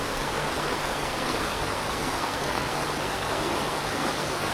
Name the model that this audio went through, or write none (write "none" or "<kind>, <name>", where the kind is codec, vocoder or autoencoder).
codec, SNAC